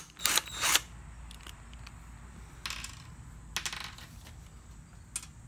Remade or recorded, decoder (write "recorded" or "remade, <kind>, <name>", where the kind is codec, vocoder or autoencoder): recorded